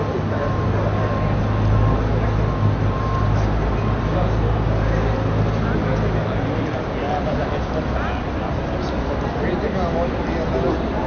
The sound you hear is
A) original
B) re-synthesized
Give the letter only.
A